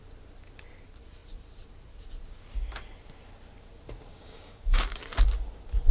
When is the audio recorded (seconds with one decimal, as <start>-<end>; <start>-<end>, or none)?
0.0-4.1; 5.0-5.9